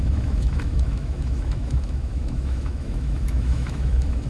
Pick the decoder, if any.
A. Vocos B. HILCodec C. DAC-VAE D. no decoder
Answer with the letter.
C